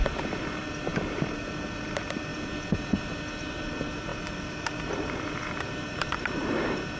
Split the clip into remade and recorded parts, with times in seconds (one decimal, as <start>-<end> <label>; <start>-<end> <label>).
0.0-2.3 remade; 2.3-3.4 recorded; 3.4-7.0 remade

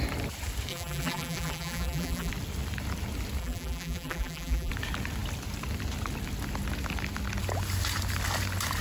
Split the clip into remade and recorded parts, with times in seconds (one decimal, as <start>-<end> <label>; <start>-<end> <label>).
0.0-0.7 recorded; 0.7-2.3 remade; 2.3-3.4 recorded; 3.4-4.7 remade; 4.7-8.8 recorded

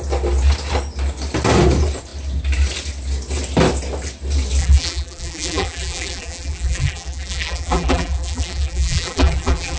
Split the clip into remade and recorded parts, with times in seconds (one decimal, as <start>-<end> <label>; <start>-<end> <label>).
0.0-4.6 recorded; 4.6-9.8 remade

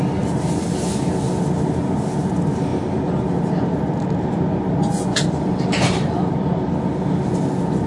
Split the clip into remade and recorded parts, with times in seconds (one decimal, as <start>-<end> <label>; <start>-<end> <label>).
0.0-5.1 recorded; 5.1-6.5 remade; 6.5-7.9 recorded

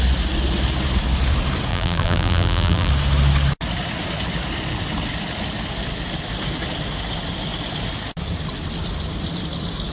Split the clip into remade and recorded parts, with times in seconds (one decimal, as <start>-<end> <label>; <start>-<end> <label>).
0.0-1.7 recorded; 1.7-2.9 remade; 2.9-9.9 recorded